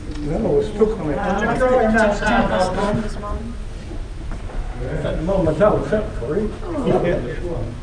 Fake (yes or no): no